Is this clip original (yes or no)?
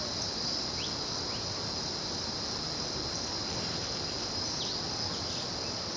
yes